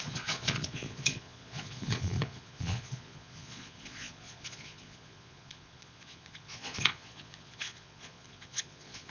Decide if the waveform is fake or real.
fake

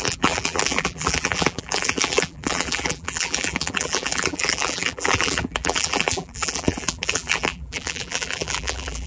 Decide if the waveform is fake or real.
fake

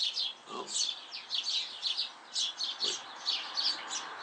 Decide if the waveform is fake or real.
real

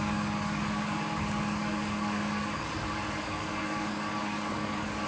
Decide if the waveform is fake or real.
fake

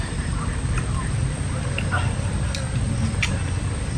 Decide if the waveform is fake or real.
real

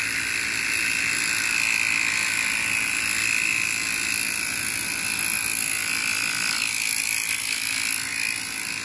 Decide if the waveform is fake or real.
real